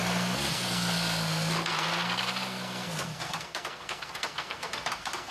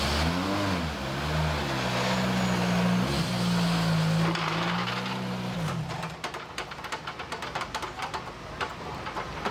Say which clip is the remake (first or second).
first